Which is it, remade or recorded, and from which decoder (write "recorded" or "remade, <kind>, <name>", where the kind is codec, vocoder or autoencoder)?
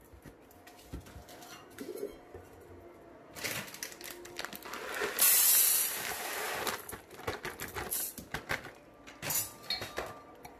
recorded